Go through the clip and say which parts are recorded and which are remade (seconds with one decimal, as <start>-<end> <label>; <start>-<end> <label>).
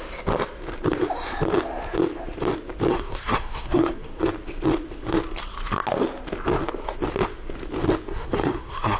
0.0-2.9 recorded; 2.9-4.2 remade; 4.2-8.1 recorded; 8.1-9.0 remade